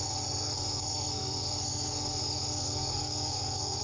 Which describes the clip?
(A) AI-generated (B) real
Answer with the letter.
A